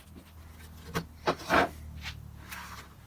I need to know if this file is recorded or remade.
recorded